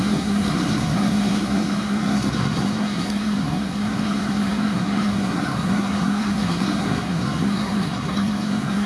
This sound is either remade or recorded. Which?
remade